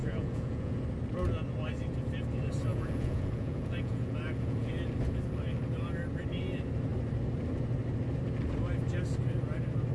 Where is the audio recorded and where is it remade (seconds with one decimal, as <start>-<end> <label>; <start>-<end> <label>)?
0.0-0.8 remade; 0.8-2.7 recorded; 2.7-4.7 remade; 4.7-9.9 recorded